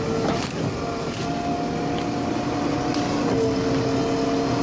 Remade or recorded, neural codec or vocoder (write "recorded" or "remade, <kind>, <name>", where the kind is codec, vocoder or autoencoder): recorded